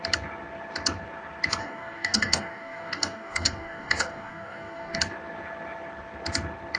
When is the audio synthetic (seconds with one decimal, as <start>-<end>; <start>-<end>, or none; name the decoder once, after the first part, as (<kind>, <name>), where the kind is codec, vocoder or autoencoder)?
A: 1.6-5.0 (codec, DAC)